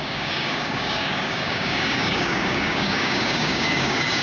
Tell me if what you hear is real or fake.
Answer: fake